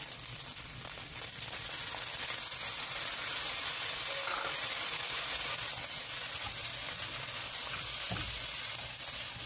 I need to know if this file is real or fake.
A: real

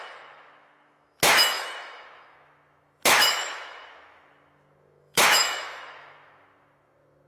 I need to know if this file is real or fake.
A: fake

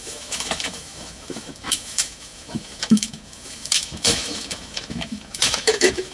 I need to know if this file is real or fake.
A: fake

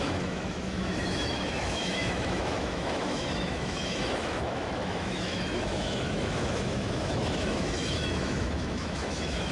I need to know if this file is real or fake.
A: fake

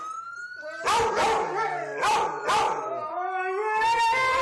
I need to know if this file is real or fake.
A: real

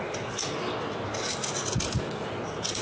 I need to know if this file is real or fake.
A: real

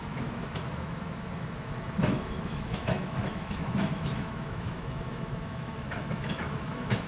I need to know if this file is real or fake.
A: fake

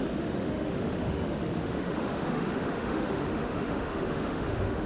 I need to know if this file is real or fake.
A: fake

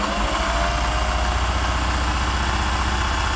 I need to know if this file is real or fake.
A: real